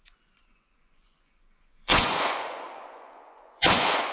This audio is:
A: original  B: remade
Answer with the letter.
B